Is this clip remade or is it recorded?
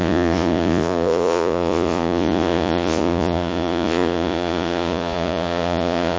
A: remade